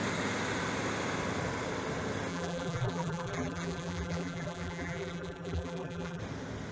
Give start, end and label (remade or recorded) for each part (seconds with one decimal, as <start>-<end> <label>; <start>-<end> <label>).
0.0-2.3 recorded; 2.3-6.2 remade; 6.2-6.7 recorded

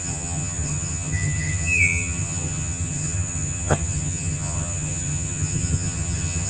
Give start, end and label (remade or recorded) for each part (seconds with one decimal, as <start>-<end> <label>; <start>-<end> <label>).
0.0-6.5 remade

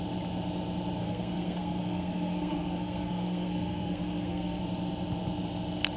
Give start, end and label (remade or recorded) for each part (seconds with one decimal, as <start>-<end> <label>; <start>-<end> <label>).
0.0-1.0 recorded; 1.0-4.6 remade; 4.6-6.0 recorded

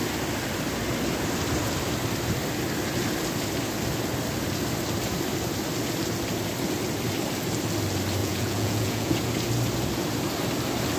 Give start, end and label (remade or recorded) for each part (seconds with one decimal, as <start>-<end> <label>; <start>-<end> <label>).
0.0-8.2 recorded; 8.2-9.2 remade; 9.2-11.0 recorded

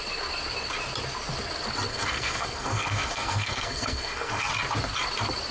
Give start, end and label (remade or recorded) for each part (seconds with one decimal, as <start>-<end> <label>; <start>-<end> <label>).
0.0-1.9 recorded; 1.9-4.5 remade; 4.5-5.5 recorded

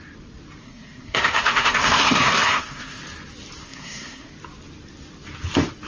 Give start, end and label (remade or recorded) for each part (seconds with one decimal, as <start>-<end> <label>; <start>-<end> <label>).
0.0-0.6 recorded; 0.6-3.0 remade; 3.0-3.6 recorded; 3.6-4.3 remade; 4.3-5.9 recorded

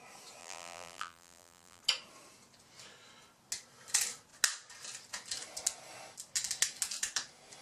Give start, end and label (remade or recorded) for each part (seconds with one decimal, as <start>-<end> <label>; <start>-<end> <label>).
0.0-0.4 recorded; 0.4-1.8 remade; 1.8-7.6 recorded